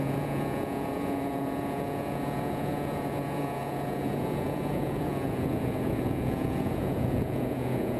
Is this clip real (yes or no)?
no